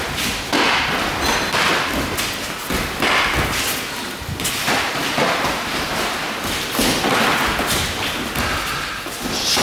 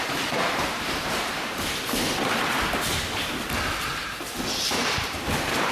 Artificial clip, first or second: second